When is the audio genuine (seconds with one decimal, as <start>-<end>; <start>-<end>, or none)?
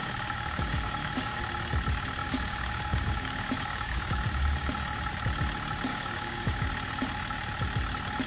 1.4-2.2; 4.7-5.9; 6.7-8.3